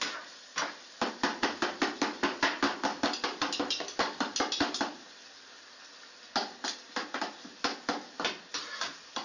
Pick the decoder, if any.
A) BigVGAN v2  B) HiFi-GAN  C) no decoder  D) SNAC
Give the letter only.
C